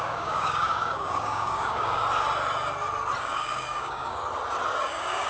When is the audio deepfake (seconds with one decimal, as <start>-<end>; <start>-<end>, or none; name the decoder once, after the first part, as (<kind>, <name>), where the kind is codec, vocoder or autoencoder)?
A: 0.0-2.0 (codec, DAC); 3.2-4.2; 4.8-5.3